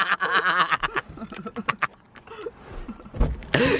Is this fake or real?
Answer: real